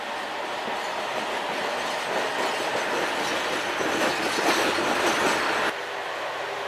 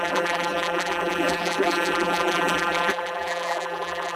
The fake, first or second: second